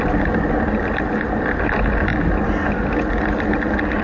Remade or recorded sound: recorded